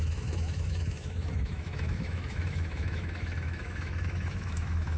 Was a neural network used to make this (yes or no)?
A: yes